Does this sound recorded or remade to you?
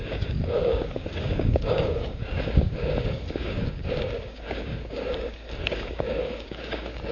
remade